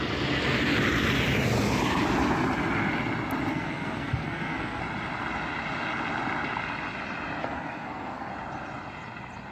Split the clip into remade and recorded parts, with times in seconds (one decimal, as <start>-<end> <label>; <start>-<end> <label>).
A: 0.0-3.5 recorded; 3.5-4.8 remade; 4.8-7.4 recorded; 7.4-8.3 remade; 8.3-9.5 recorded